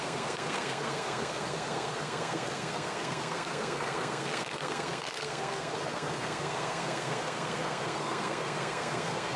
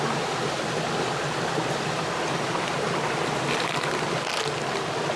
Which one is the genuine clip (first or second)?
second